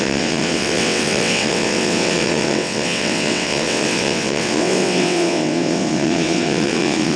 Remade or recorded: remade